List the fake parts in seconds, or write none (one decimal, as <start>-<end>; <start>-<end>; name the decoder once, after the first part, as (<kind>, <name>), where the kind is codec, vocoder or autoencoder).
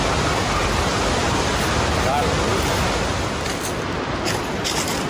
0.9-1.5 (vocoder, BigVGAN v2)